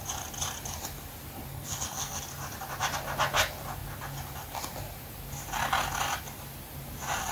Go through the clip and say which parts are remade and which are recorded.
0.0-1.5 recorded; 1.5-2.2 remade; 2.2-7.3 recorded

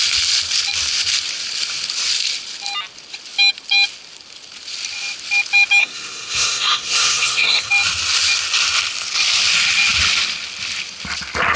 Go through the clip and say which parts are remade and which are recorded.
0.0-5.8 recorded; 5.8-7.7 remade; 7.7-11.6 recorded

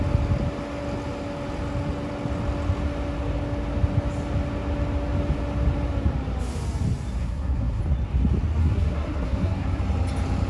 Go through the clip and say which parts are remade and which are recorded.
0.0-7.2 recorded; 7.2-7.8 remade; 7.8-8.6 recorded; 8.6-9.8 remade; 9.8-10.5 recorded

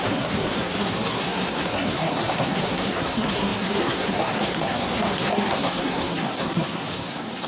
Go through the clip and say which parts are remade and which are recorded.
0.0-7.5 remade